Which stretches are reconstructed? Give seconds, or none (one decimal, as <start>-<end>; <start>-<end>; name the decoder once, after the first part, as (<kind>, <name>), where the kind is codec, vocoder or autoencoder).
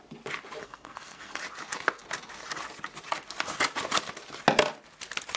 0.6-1.4 (codec, SNAC)